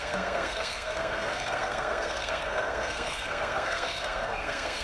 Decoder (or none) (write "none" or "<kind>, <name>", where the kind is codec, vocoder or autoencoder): codec, SNAC